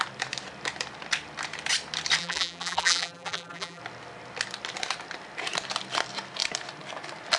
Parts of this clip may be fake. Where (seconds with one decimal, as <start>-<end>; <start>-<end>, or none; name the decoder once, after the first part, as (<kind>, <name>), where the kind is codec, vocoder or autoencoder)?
2.2-3.8 (vocoder, BigVGAN v2)